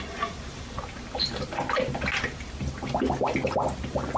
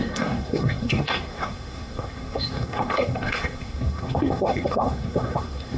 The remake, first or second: second